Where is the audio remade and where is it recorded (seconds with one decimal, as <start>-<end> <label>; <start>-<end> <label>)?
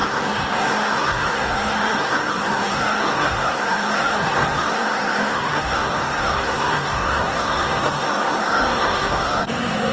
0.0-9.9 remade